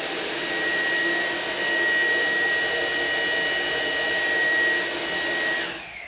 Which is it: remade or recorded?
recorded